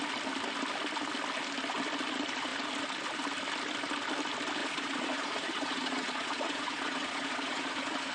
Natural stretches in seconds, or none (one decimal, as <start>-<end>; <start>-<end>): 0.0-4.6